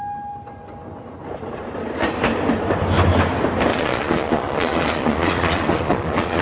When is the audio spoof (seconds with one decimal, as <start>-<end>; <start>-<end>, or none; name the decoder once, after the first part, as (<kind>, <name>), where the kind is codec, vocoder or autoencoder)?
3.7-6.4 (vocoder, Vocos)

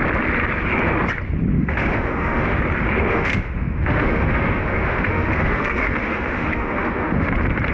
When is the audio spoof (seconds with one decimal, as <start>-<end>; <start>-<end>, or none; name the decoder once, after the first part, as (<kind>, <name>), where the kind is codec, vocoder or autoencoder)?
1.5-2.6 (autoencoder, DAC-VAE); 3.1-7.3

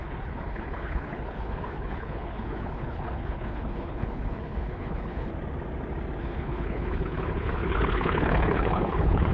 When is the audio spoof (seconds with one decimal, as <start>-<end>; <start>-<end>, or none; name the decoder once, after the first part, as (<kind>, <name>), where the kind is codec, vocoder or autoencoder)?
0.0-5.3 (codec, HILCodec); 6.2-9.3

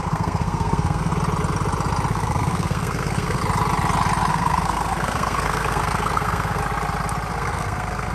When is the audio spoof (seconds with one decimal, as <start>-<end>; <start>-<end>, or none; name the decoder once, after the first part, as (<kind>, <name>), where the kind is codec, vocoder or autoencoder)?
0.0-1.1 (codec, SNAC); 2.1-3.4; 4.3-6.6; 7.3-8.1

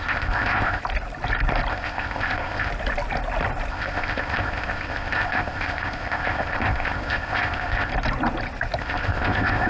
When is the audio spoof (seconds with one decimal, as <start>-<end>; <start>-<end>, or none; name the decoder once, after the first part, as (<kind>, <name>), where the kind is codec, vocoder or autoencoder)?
0.0-0.8 (codec, ZipCodec); 1.7-2.7; 3.7-7.9; 8.8-9.7